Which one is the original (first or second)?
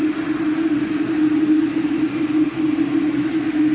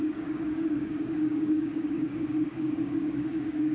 first